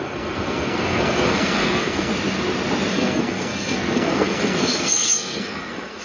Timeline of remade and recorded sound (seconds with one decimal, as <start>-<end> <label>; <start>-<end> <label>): 0.0-2.1 remade; 2.1-2.9 recorded; 2.9-6.0 remade